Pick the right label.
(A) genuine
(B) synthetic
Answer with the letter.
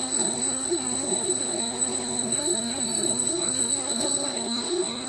B